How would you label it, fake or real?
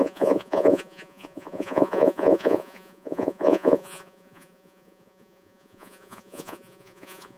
fake